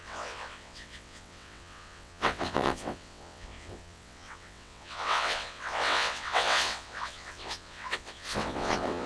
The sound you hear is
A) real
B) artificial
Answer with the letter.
B